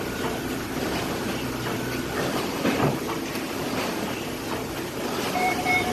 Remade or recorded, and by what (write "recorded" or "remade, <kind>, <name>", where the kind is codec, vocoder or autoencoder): remade, vocoder, BigVGAN v2